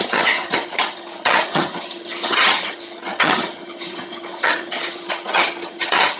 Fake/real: fake